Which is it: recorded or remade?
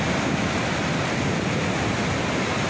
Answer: recorded